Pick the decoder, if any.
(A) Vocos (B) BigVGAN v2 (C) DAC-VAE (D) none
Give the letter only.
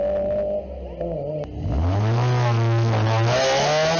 D